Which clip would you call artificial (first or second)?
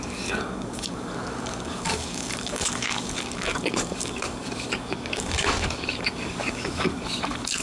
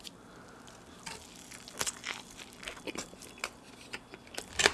first